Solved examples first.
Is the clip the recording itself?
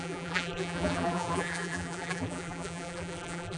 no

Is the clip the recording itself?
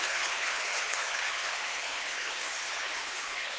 no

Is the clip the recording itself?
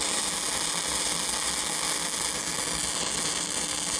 yes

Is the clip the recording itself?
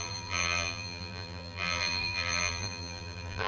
no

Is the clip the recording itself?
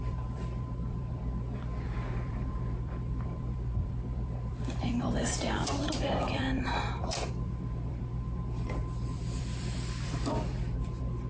no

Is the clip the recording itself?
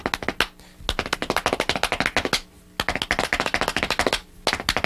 yes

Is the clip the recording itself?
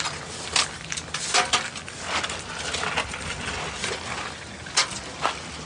yes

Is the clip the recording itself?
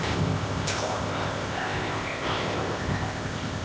no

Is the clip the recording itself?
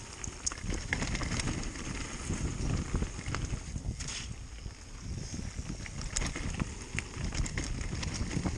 yes